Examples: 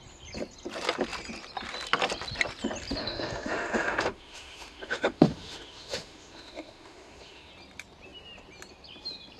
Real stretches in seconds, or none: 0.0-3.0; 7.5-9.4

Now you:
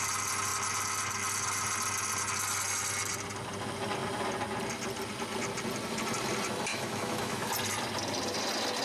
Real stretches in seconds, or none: 0.0-6.7; 7.5-8.8

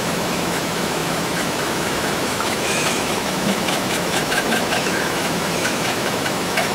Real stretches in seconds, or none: none

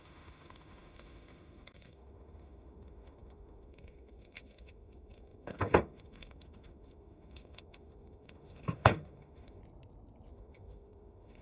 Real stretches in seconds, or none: 9.6-10.3

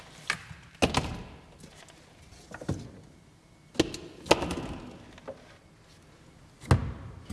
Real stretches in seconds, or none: 0.0-7.3

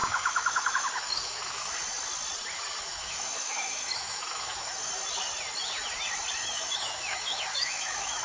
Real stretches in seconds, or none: 1.7-2.9; 4.9-6.4

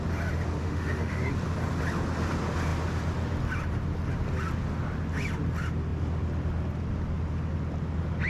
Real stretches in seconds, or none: 0.0-0.6; 1.2-8.3

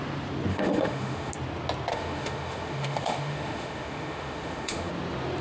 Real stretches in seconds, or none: 0.0-0.5; 1.3-1.9; 4.9-5.4